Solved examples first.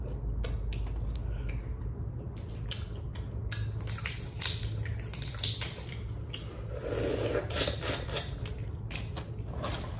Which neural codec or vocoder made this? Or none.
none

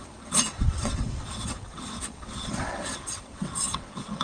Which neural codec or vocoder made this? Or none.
vocoder, WaveNeXt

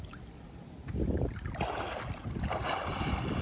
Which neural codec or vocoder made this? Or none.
none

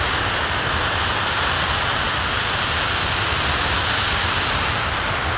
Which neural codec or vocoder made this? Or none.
none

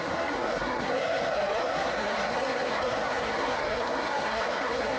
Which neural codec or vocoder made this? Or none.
codec, SNAC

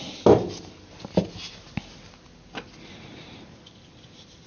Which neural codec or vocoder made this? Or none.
none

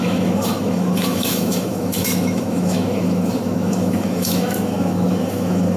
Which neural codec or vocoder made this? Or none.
autoencoder, DAC-VAE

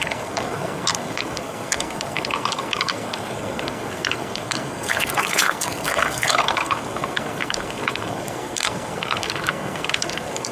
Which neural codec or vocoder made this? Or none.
codec, SNAC